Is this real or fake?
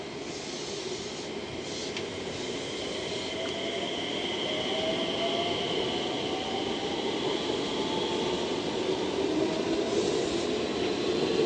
real